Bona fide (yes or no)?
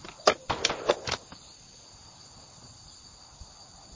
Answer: yes